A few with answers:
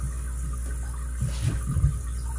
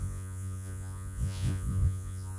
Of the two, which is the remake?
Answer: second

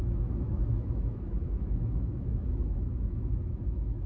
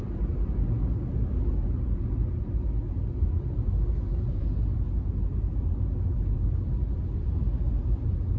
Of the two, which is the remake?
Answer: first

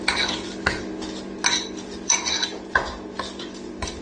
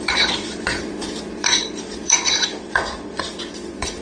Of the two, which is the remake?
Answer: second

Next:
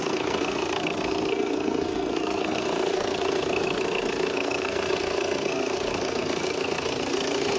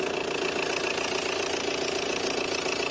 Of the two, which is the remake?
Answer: first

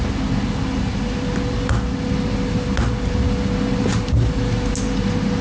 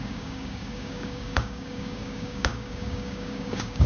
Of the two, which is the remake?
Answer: second